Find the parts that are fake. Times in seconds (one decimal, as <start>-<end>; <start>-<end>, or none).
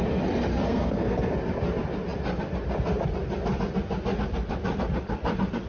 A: 0.5-1.3